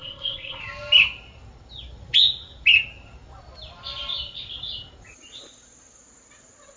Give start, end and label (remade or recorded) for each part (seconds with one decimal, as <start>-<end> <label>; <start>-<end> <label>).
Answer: 0.0-0.6 remade; 0.6-6.8 recorded